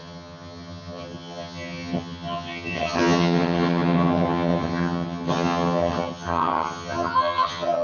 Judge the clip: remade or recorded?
remade